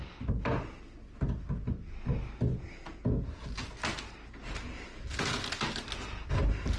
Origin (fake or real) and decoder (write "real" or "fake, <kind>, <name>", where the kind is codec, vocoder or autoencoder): real